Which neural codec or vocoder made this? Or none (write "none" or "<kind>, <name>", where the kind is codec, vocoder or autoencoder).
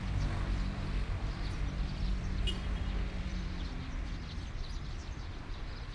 vocoder, BigVGAN v2